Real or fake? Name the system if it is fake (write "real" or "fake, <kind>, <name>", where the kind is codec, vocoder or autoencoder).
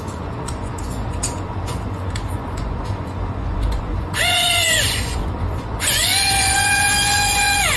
fake, vocoder, Vocos